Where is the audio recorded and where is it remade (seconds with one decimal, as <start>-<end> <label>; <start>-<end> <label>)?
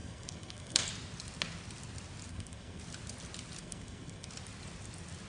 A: 0.0-0.9 remade; 0.9-2.3 recorded; 2.3-2.8 remade; 2.8-3.6 recorded; 3.6-4.3 remade; 4.3-5.3 recorded